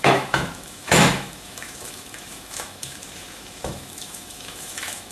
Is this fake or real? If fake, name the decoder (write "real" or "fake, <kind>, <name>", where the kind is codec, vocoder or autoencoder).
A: fake, autoencoder, DAC-VAE